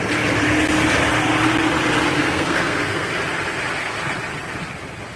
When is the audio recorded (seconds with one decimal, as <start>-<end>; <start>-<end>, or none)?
0.0-2.2; 3.1-5.2